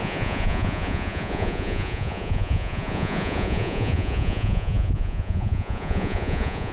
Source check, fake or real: fake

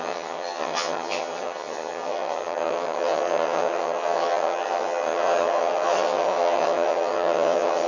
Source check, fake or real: fake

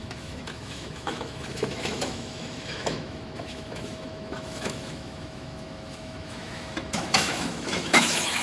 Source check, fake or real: fake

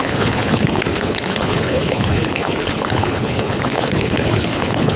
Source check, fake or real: fake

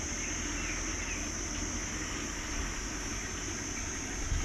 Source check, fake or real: real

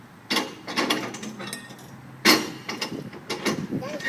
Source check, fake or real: real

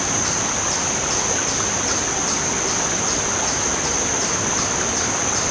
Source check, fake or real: real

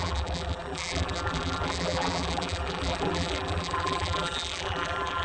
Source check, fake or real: fake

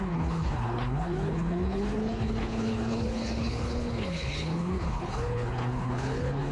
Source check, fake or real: fake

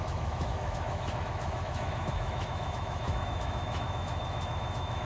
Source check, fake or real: fake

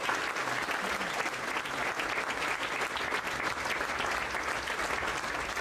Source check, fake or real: real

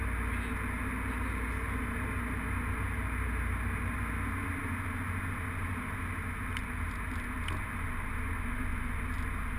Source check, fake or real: real